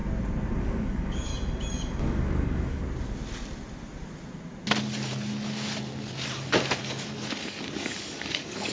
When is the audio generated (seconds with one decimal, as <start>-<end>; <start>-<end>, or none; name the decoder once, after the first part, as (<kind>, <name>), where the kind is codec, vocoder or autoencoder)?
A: 0.6-1.3 (codec, DAC); 2.0-2.8; 6.8-8.7